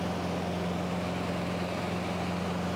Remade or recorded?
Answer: recorded